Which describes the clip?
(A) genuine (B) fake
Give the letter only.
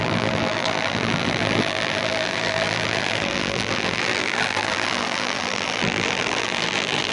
B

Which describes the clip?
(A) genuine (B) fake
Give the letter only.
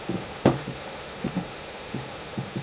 B